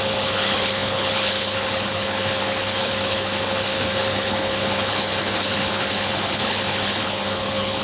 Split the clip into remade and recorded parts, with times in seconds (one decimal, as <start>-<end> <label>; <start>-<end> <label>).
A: 0.0-7.8 remade